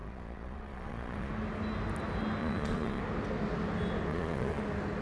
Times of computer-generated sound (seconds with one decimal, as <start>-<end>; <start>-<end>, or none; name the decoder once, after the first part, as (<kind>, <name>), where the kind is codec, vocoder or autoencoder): 0.0-1.3 (vocoder, Vocos); 2.4-3.0; 4.1-4.6